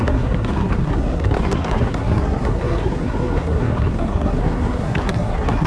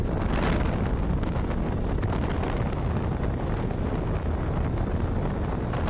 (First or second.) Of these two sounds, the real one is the second